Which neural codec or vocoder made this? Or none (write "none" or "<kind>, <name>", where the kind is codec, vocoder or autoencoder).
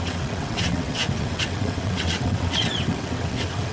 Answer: vocoder, WaveNeXt